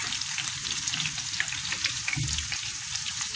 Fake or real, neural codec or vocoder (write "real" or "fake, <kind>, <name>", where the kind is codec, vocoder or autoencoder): fake, vocoder, BigVGAN v2